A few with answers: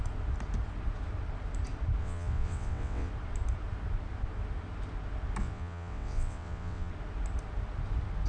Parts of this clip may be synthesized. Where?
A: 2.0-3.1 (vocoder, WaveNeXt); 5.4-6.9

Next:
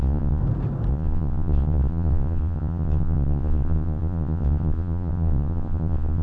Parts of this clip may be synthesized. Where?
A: 0.0-0.4 (vocoder, Vocos); 0.9-6.2

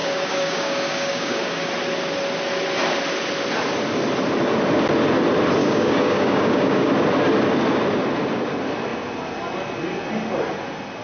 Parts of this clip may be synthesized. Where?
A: 0.0-1.7 (codec, DAC); 5.6-6.9

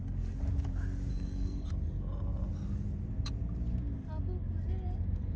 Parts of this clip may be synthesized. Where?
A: 1.1-1.7 (codec, SNAC)

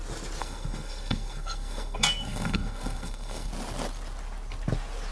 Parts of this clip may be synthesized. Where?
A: 0.4-3.5 (codec, SNAC)

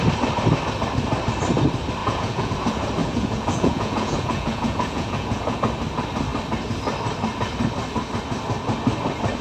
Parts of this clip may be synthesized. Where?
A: 2.0-2.5 (vocoder, Vocos); 3.0-5.6

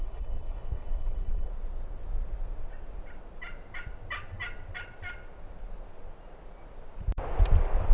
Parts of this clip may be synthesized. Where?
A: 0.0-1.5 (codec, HILCodec)